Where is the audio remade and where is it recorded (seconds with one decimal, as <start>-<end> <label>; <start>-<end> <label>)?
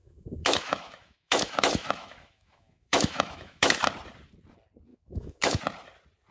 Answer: 0.0-3.8 remade; 3.8-4.9 recorded; 4.9-5.6 remade; 5.6-6.3 recorded